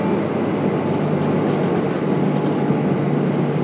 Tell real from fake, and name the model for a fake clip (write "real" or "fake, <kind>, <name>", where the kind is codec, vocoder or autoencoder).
real